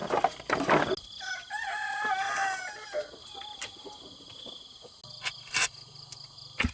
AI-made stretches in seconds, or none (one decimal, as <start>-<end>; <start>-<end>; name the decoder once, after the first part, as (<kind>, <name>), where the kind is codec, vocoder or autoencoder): none